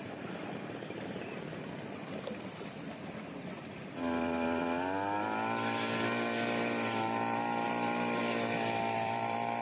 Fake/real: fake